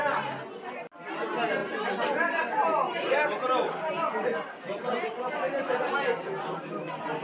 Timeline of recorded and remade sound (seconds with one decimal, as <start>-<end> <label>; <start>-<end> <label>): 0.0-7.2 recorded